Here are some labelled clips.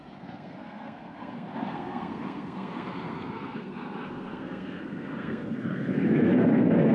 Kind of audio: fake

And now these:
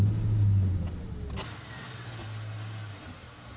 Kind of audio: real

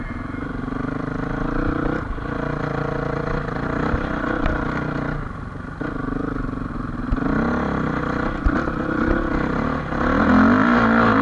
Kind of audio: real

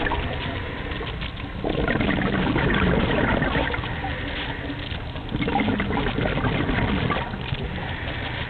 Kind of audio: real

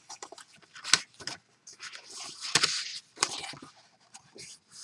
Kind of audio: real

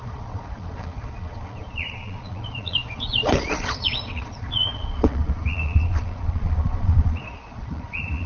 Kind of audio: fake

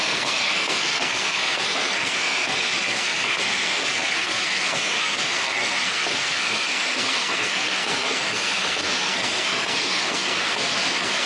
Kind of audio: fake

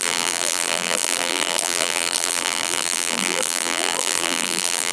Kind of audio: fake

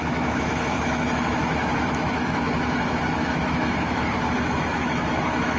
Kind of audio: fake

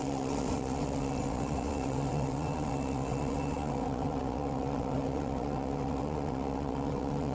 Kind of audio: fake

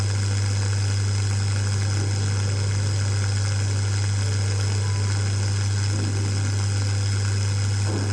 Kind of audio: real